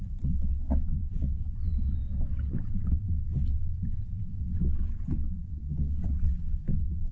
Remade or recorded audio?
remade